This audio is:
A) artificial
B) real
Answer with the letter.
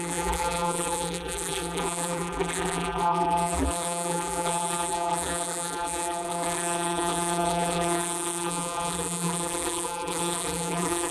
A